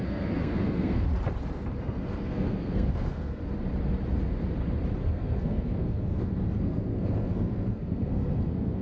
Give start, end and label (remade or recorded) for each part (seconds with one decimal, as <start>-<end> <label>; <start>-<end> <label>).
0.0-1.1 remade; 1.1-1.8 recorded; 1.8-3.4 remade; 3.4-5.0 recorded; 5.0-8.8 remade